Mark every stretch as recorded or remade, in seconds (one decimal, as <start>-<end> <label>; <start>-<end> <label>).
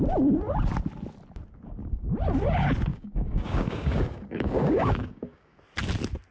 0.0-2.9 recorded; 2.9-5.6 remade; 5.6-6.3 recorded